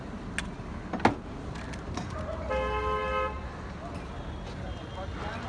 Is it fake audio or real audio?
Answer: real